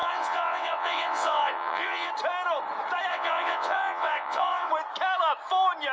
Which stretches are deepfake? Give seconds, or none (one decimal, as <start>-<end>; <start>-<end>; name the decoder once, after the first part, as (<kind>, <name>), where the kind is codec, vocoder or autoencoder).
0.0-2.1 (vocoder, WaveNeXt); 3.1-4.7